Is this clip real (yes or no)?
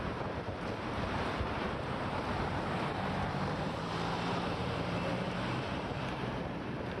no